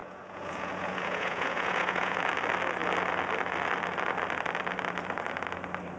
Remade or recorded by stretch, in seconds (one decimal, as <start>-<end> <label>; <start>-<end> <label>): 0.0-2.2 remade; 2.2-6.0 recorded